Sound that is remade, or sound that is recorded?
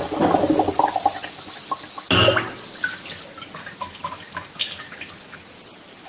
recorded